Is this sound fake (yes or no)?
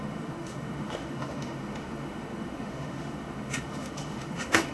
yes